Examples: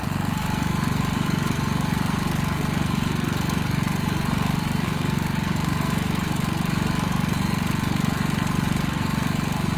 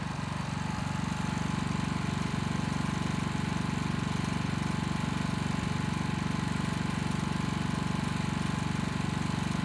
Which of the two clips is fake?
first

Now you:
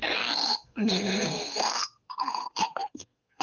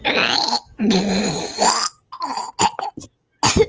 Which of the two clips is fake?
first